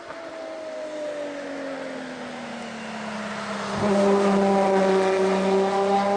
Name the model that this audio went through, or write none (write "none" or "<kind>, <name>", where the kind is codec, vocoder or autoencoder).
none